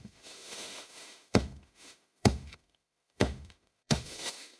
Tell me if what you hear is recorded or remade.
remade